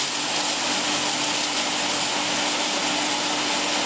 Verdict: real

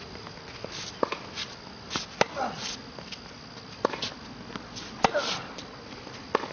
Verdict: real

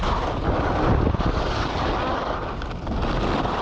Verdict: real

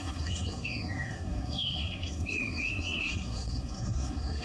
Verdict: fake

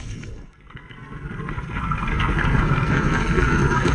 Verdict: fake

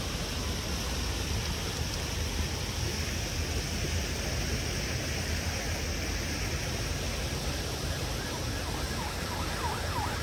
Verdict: real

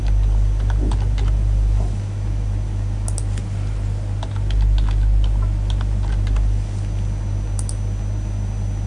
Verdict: real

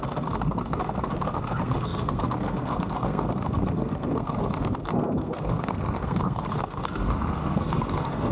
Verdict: fake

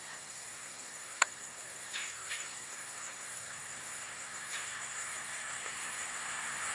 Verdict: fake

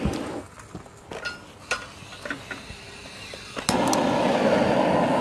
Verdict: real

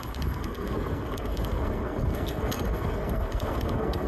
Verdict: fake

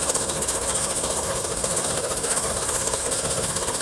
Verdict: fake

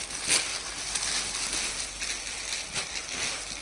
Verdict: real